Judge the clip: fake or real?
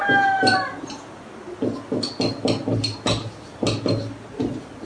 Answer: real